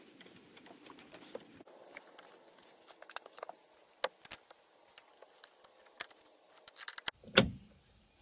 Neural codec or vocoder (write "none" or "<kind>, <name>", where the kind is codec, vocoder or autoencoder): none